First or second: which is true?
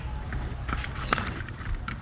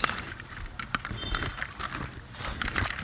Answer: second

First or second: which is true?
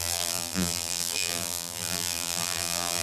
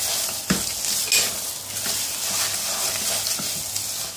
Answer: second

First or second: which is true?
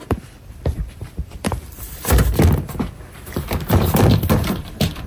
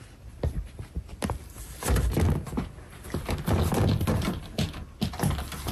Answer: second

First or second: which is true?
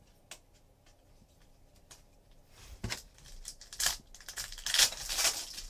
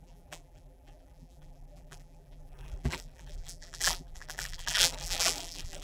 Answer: first